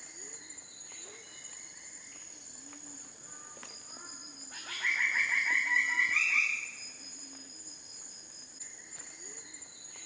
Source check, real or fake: real